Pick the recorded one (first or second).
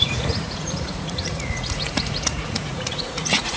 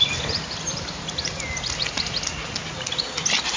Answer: second